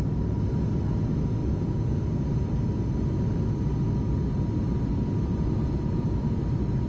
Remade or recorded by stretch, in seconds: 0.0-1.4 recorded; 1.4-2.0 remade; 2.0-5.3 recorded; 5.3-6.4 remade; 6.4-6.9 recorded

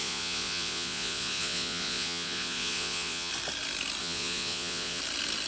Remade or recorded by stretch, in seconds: 0.0-3.3 remade; 3.3-4.0 recorded; 4.0-5.0 remade; 5.0-5.5 recorded

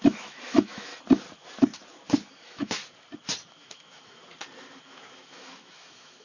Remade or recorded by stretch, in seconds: 0.0-0.9 remade; 0.9-2.3 recorded; 2.3-2.8 remade; 2.8-3.5 recorded; 3.5-4.2 remade; 4.2-4.8 recorded; 4.8-6.2 remade

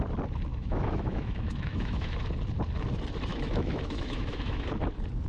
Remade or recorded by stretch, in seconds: 0.0-0.5 recorded; 0.5-2.1 remade; 2.1-3.3 recorded; 3.3-4.7 remade; 4.7-5.3 recorded

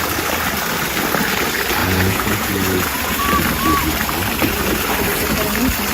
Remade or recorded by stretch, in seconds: 0.0-1.8 recorded; 1.8-3.2 remade; 3.2-5.9 recorded

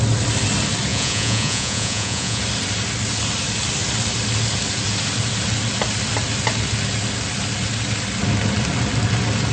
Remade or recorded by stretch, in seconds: 0.0-0.9 recorded; 0.9-2.4 remade; 2.4-9.5 recorded

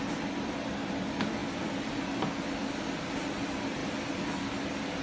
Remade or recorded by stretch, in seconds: 0.0-3.8 recorded; 3.8-4.4 remade; 4.4-5.0 recorded

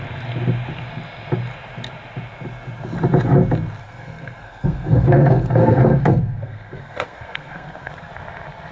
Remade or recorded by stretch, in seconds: 0.0-3.8 recorded; 3.8-8.1 remade; 8.1-8.7 recorded